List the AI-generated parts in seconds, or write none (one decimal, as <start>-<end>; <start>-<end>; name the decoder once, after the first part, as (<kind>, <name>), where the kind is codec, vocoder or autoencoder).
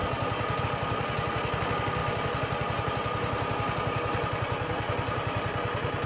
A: none